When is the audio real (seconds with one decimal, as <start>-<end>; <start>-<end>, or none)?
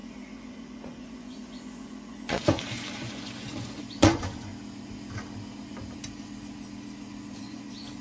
4.5-7.4